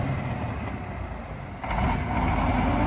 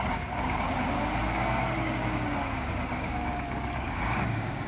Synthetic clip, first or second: second